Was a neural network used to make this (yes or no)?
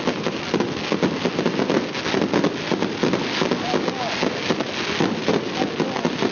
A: no